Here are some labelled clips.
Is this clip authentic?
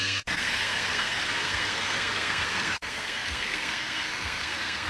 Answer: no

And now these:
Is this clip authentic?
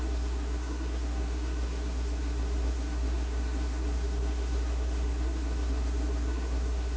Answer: no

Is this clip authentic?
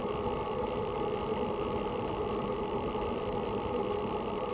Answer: yes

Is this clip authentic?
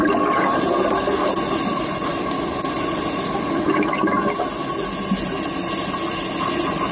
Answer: yes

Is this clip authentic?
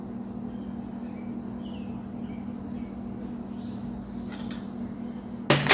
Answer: yes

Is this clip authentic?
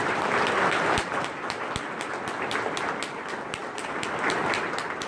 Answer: yes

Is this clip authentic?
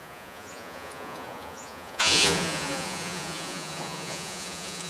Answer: no